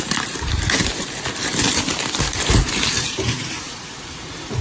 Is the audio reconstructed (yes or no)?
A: yes